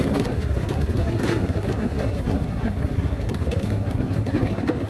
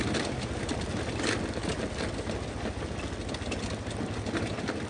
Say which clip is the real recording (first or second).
second